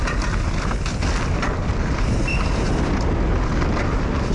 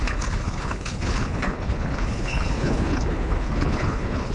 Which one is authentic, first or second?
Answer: first